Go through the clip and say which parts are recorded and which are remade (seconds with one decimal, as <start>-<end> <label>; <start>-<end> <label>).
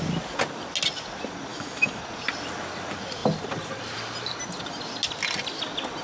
0.0-1.5 recorded; 1.5-2.0 remade; 2.0-6.0 recorded